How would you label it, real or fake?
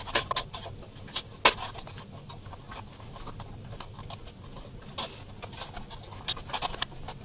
real